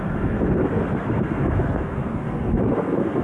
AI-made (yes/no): yes